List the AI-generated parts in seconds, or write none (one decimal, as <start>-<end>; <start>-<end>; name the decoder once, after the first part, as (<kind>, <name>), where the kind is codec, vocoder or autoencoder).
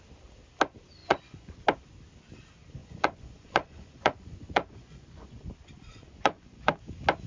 1.0-1.6 (vocoder, Vocos); 2.8-5.5; 5.9-6.8